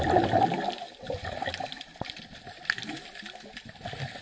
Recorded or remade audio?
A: recorded